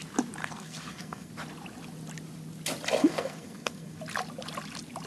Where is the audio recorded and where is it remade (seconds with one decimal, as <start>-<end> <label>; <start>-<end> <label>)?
0.0-0.4 recorded; 0.4-1.3 remade; 1.3-3.0 recorded; 3.0-4.0 remade; 4.0-5.1 recorded

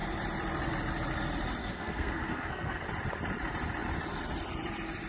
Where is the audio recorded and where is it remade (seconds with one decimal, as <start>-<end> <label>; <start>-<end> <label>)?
0.0-1.6 recorded; 1.6-2.8 remade; 2.8-5.1 recorded

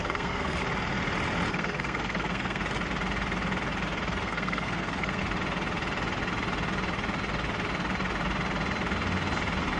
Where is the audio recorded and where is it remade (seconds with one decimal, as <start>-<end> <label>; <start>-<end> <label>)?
0.0-0.6 remade; 0.6-1.5 recorded; 1.5-2.6 remade; 2.6-4.1 recorded; 4.1-5.2 remade; 5.2-9.8 recorded

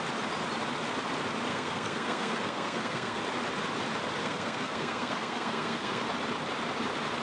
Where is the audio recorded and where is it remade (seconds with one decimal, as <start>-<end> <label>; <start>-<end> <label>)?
0.0-1.5 recorded; 1.5-3.2 remade; 3.2-4.2 recorded; 4.2-6.0 remade; 6.0-7.2 recorded